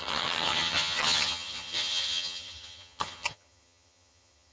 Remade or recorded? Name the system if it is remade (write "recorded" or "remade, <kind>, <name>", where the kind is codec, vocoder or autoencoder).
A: remade, vocoder, HiFi-GAN